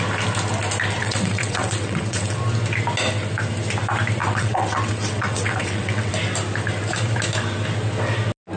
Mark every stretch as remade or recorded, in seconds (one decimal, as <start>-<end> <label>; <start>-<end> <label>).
0.0-1.0 recorded; 1.0-2.4 remade; 2.4-4.2 recorded; 4.2-6.1 remade; 6.1-8.6 recorded